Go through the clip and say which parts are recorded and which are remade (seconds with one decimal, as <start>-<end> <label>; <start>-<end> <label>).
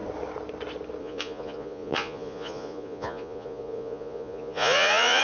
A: 0.0-1.0 recorded; 1.0-5.2 remade